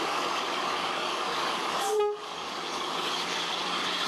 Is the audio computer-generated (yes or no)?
yes